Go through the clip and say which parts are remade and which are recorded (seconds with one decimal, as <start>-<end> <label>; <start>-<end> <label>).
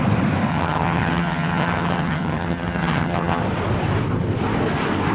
0.0-0.5 recorded; 0.5-3.4 remade; 3.4-5.1 recorded